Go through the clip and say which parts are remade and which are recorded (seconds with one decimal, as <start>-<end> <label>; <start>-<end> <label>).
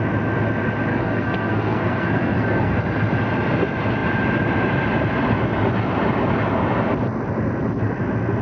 0.0-0.9 recorded; 0.9-2.7 remade; 2.7-8.4 recorded